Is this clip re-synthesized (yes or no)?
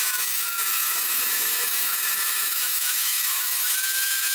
yes